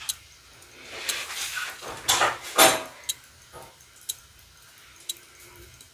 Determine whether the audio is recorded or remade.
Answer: recorded